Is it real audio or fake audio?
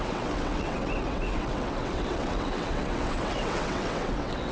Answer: fake